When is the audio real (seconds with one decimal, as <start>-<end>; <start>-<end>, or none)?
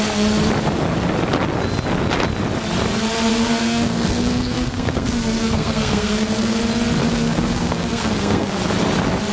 0.0-3.3; 6.6-7.0; 8.6-9.3